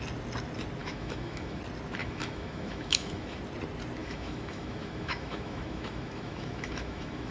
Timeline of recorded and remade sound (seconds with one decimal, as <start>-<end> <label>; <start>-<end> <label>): 0.0-0.8 recorded; 0.8-1.6 remade; 1.6-2.0 recorded; 2.0-3.4 remade; 3.4-4.0 recorded; 4.0-7.3 remade